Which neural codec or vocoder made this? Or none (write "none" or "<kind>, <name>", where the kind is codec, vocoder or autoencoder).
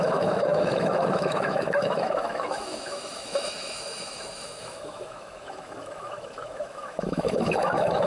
autoencoder, DAC-VAE